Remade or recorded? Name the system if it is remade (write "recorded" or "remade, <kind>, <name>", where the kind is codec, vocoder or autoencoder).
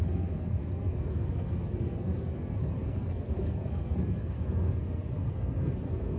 remade, codec, SNAC